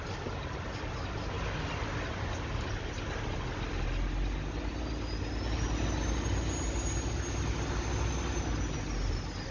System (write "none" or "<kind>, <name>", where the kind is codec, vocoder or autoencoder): none